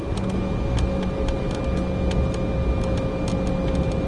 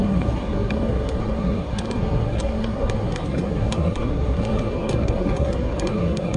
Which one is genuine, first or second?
first